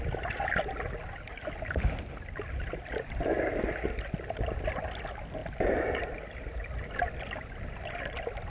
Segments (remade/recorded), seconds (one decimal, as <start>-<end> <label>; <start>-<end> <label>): 0.0-8.5 recorded